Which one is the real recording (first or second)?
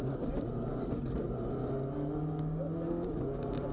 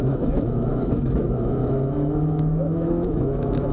first